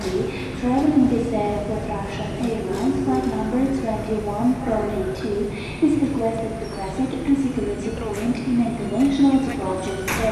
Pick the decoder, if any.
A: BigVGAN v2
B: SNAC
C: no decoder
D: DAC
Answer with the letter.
C